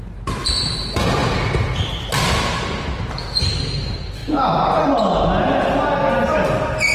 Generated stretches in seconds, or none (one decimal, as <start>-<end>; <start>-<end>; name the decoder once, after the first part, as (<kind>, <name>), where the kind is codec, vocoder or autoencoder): 4.2-5.2 (vocoder, BigVGAN v2)

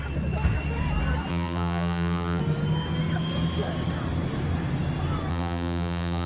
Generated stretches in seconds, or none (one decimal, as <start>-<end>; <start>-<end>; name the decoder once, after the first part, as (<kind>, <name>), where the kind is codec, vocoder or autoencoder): 1.3-2.4 (vocoder, BigVGAN v2); 5.3-6.3

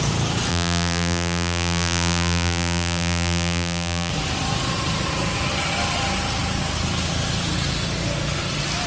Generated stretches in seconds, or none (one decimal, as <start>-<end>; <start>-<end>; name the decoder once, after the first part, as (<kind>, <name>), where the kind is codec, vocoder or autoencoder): 0.5-4.1 (vocoder, BigVGAN v2)